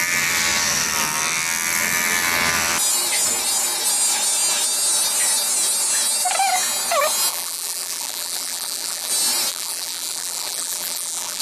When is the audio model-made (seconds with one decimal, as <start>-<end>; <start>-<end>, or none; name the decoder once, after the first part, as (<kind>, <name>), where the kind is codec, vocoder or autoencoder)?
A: 7.3-9.1 (vocoder, BigVGAN v2); 9.5-11.4